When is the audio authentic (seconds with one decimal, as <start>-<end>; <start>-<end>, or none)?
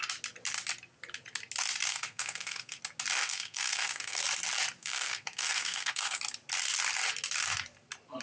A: 0.0-1.9; 2.8-3.2; 4.2-4.8; 6.2-8.2